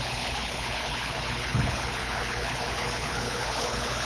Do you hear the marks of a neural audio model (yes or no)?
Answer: yes